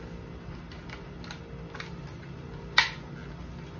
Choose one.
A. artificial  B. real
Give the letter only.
B